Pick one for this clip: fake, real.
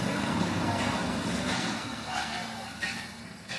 fake